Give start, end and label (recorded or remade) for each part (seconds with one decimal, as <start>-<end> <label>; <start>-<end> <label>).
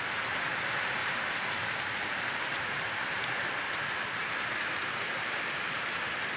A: 0.0-1.0 recorded; 1.0-4.4 remade; 4.4-6.4 recorded